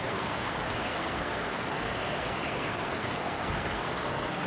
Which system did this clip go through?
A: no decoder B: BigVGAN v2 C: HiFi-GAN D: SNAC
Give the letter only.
D